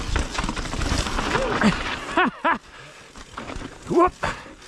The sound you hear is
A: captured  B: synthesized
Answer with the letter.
A